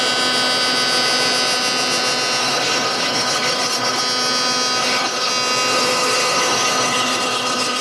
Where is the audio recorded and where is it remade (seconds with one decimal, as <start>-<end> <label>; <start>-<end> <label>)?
0.0-2.4 recorded; 2.4-4.0 remade; 4.0-4.8 recorded; 4.8-5.3 remade; 5.3-5.7 recorded; 5.7-7.8 remade